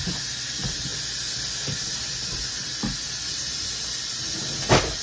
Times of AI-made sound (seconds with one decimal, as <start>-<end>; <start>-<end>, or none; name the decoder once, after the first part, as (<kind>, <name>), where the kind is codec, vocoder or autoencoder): none